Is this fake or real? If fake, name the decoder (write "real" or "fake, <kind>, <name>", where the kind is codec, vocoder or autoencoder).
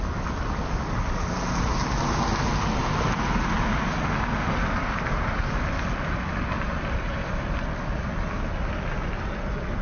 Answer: real